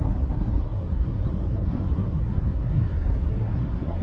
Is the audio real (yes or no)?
no